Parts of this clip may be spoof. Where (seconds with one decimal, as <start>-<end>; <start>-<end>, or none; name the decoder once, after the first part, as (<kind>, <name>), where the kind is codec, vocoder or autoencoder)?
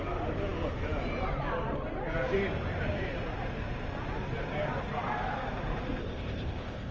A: 6.0-6.9 (codec, ZipCodec)